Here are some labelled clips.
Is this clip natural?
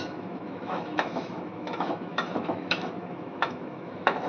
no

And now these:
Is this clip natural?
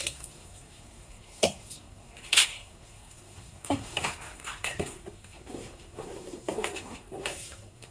no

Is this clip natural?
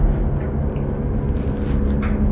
yes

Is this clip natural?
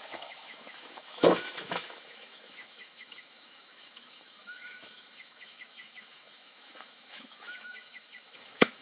no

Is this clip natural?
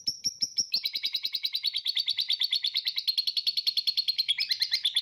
yes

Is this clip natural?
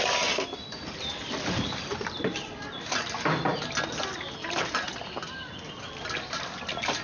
yes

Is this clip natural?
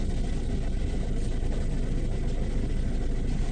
yes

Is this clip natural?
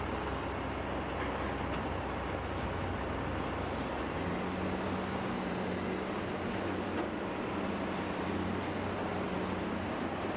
yes